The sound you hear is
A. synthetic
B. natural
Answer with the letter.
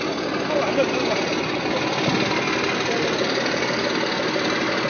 B